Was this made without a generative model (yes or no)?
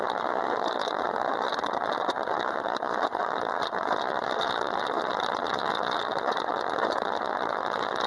no